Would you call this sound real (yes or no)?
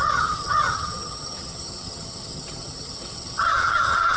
no